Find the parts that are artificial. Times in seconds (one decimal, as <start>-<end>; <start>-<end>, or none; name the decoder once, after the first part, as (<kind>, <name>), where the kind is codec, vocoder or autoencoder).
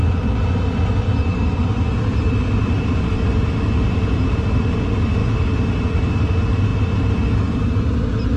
none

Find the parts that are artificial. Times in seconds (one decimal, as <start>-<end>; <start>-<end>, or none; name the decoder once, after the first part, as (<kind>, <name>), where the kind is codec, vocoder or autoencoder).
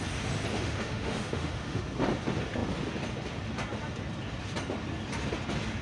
0.5-1.8 (autoencoder, DAC-VAE)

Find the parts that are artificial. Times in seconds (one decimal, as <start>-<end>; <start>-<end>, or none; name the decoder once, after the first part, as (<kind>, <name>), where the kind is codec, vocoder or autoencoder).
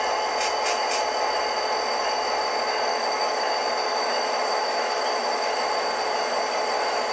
2.9-3.5 (autoencoder, DAC-VAE); 3.9-5.5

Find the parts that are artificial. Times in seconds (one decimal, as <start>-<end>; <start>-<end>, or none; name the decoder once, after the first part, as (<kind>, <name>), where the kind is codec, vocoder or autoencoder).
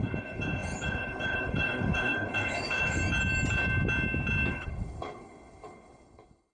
0.0-3.0 (codec, HILCodec); 4.5-6.5